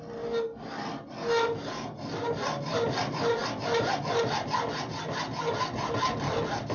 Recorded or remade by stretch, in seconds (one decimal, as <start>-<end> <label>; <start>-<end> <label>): 0.0-6.7 recorded

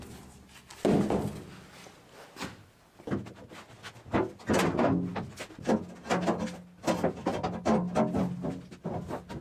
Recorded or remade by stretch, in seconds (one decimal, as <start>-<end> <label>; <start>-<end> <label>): 0.0-9.4 recorded

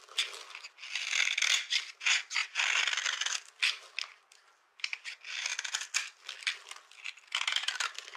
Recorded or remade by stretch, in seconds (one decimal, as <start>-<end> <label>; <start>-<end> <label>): 0.0-8.2 recorded

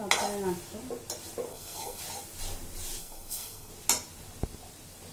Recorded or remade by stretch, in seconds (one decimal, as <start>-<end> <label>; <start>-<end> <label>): 0.0-1.5 recorded; 1.5-2.0 remade; 2.0-3.0 recorded; 3.0-3.7 remade; 3.7-5.1 recorded